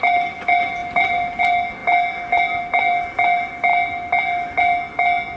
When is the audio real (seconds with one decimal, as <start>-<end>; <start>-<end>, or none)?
0.0-5.4